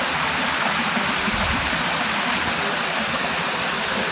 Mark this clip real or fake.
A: real